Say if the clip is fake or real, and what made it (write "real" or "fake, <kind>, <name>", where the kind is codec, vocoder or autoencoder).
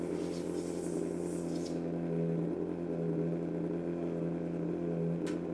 real